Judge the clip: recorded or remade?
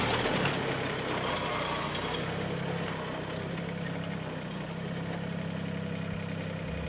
recorded